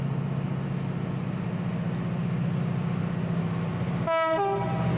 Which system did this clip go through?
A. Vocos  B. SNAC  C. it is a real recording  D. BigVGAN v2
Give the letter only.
C